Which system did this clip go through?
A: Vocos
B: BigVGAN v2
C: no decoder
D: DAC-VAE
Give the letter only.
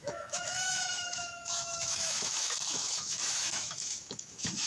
D